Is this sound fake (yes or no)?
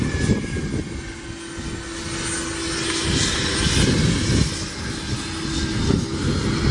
no